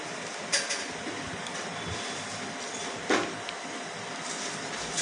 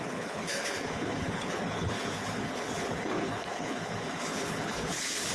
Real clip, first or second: first